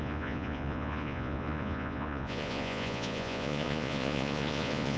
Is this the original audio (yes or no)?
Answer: no